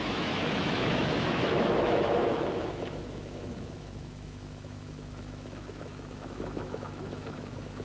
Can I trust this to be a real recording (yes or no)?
no